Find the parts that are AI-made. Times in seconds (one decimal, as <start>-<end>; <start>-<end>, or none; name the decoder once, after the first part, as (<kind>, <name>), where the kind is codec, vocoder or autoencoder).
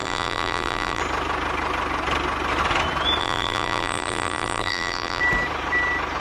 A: 0.0-1.0 (vocoder, BigVGAN v2); 3.2-5.2